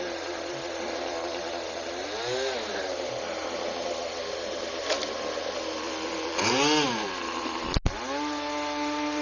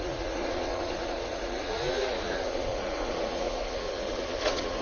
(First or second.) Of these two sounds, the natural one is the first